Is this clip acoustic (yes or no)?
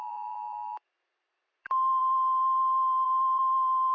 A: no